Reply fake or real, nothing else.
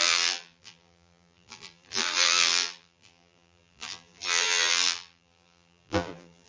fake